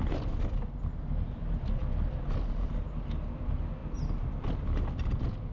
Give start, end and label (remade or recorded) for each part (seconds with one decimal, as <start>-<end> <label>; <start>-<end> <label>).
0.0-3.8 recorded; 3.8-5.1 remade; 5.1-5.5 recorded